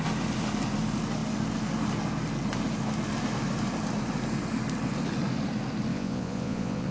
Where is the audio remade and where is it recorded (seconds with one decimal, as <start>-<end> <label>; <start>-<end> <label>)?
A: 0.0-5.9 recorded; 5.9-6.9 remade